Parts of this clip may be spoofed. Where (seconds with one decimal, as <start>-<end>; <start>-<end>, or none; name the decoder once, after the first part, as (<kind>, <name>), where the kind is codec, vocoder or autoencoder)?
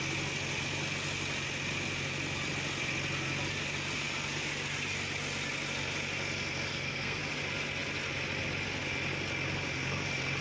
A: 6.7-7.2 (codec, SNAC)